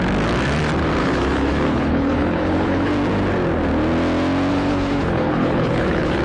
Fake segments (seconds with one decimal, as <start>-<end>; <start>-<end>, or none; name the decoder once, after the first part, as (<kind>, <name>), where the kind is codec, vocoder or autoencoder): 1.0-2.9 (codec, HILCodec); 4.5-6.2